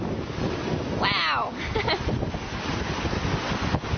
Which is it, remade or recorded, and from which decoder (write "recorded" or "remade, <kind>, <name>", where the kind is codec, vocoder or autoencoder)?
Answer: recorded